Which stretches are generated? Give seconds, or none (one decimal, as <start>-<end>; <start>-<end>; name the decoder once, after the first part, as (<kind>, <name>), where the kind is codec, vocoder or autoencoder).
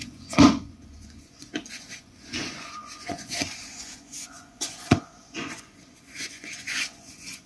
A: 0.0-7.5 (vocoder, Vocos)